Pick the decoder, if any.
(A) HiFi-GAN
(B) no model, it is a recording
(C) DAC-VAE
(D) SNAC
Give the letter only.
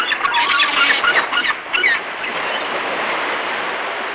B